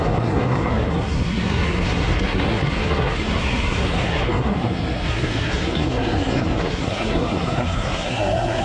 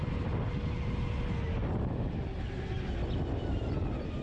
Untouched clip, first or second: second